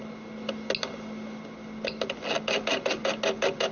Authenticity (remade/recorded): recorded